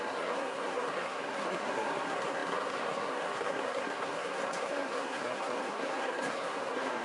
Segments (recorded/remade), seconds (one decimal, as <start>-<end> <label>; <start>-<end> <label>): 0.0-7.0 remade